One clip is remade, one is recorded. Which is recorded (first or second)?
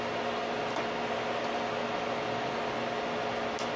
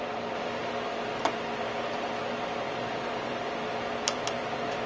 first